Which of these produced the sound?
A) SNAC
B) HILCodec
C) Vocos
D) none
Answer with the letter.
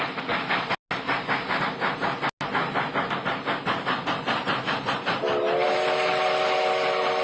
D